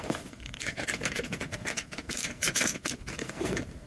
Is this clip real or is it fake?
fake